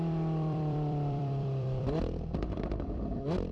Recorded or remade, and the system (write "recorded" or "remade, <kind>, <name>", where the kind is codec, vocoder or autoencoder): remade, vocoder, BigVGAN v2